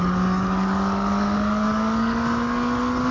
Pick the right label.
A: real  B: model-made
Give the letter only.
B